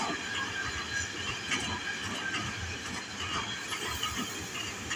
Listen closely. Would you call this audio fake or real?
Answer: real